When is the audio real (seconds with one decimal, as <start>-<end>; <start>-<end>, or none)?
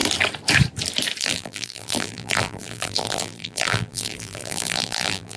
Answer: 0.0-1.2